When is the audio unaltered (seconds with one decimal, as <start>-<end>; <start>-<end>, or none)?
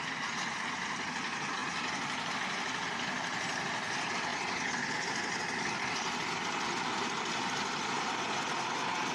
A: 0.0-1.6; 2.3-9.1